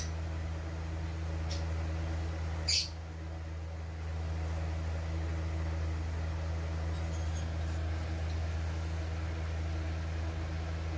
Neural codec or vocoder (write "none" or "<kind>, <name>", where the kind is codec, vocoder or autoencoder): none